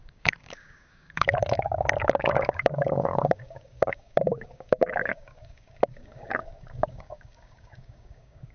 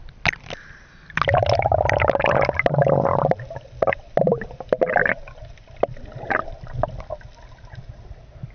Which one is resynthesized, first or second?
first